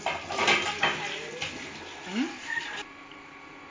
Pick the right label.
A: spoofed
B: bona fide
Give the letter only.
B